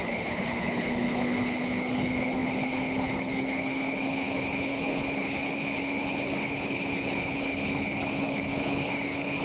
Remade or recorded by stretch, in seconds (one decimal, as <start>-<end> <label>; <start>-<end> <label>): 0.0-9.4 remade